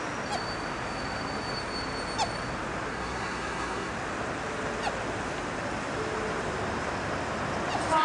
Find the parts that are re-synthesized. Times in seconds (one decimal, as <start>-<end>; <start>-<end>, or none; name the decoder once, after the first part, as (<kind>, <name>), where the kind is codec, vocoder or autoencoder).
2.9-3.9 (codec, SNAC)